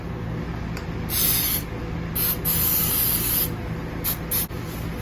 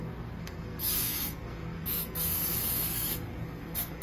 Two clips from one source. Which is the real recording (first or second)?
first